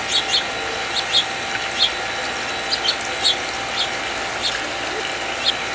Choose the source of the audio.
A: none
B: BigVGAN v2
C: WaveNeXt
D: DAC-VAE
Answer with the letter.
A